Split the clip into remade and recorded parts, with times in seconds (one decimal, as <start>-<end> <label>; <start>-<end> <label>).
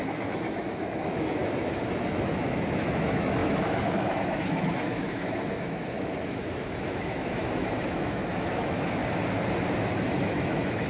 0.0-9.0 remade; 9.0-10.2 recorded; 10.2-10.9 remade